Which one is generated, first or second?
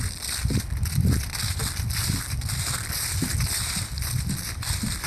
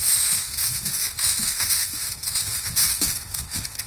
second